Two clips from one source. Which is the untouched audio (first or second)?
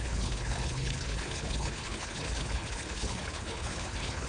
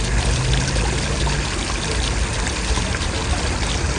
second